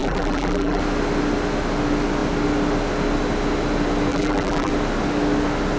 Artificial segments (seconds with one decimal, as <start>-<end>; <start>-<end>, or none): 0.0-0.8; 4.1-4.7

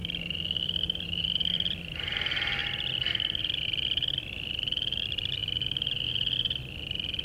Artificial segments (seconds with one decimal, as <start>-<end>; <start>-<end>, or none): 0.0-7.2

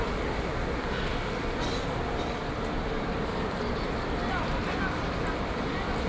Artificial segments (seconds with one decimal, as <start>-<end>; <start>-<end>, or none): 0.0-1.1; 1.9-2.4

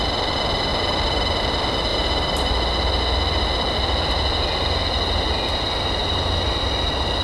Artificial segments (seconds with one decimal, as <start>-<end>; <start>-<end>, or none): 1.9-2.5; 6.0-6.6

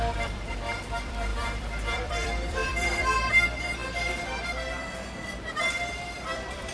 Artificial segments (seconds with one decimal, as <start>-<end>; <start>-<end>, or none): 0.0-3.8; 5.9-6.7

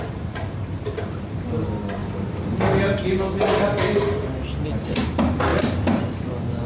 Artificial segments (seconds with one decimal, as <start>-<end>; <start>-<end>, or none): 0.0-2.0; 5.1-6.7

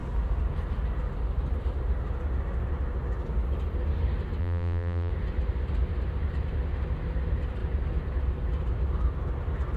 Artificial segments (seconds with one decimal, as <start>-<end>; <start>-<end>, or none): 4.4-5.1